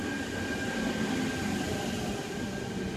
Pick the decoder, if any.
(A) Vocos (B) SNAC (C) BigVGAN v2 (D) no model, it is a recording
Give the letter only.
D